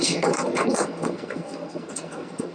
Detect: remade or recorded remade